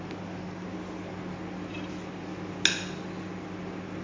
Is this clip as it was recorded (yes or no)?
yes